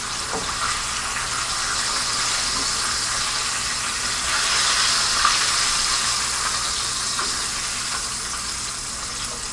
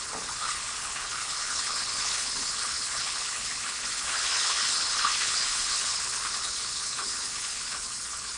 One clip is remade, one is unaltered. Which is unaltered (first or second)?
first